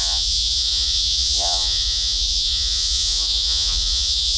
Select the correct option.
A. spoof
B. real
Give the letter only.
A